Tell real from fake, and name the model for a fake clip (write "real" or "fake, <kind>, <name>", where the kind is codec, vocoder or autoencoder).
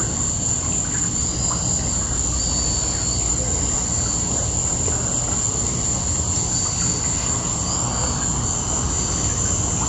real